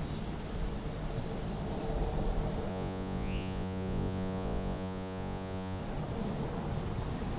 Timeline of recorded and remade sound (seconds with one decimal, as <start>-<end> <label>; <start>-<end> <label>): 0.0-2.7 recorded; 2.7-5.8 remade; 5.8-7.4 recorded